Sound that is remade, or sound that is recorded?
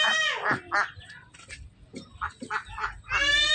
recorded